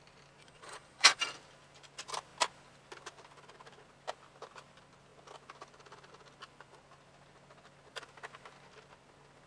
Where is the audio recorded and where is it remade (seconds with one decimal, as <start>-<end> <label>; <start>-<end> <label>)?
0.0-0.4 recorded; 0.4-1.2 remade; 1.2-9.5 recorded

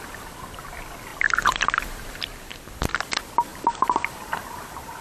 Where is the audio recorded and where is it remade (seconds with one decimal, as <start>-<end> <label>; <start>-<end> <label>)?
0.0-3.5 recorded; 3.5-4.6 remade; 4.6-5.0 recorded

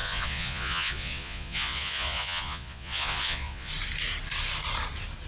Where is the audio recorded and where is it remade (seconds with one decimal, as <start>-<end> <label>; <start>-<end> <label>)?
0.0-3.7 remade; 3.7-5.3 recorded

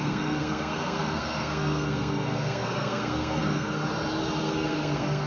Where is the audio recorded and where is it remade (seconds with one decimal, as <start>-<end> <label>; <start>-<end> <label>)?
0.0-3.8 remade; 3.8-4.4 recorded; 4.4-5.3 remade